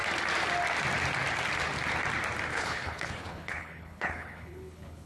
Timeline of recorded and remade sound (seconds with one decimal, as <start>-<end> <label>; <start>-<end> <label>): 0.0-2.5 recorded; 2.5-5.1 remade